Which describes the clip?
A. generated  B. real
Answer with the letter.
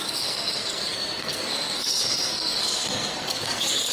A